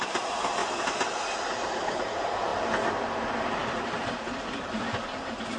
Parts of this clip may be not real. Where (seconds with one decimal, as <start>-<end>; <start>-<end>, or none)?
0.0-0.6; 1.9-2.5; 3.0-5.6